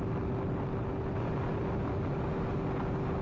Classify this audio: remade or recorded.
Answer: recorded